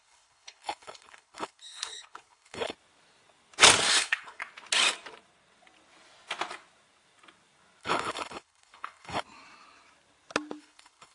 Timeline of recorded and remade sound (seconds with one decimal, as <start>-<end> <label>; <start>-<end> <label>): 0.0-2.7 remade; 2.7-3.9 recorded; 3.9-4.4 remade; 4.4-7.8 recorded; 7.8-9.2 remade; 9.2-10.6 recorded; 10.6-11.1 remade

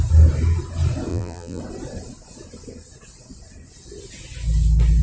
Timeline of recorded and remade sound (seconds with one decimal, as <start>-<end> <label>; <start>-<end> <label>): 0.0-1.1 recorded; 1.1-1.6 remade; 1.6-5.0 recorded